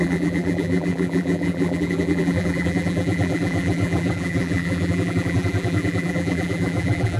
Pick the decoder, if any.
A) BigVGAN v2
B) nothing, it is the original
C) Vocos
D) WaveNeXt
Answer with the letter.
A